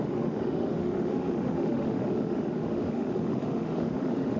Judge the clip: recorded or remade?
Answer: remade